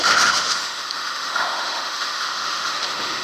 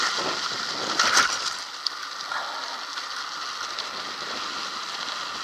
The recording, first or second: second